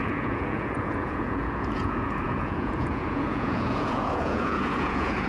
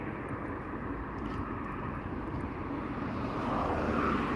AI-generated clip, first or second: first